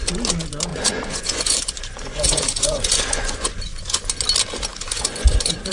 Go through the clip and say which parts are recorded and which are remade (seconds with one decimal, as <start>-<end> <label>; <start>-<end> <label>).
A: 0.0-0.7 recorded; 0.7-4.1 remade; 4.1-4.7 recorded; 4.7-5.7 remade